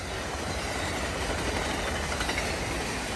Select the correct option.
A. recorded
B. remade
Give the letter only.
A